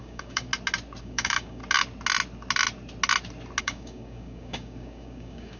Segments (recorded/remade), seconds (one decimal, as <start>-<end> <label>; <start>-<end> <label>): 0.0-0.5 remade; 0.5-1.0 recorded; 1.0-1.6 remade; 1.6-3.6 recorded; 3.6-5.6 remade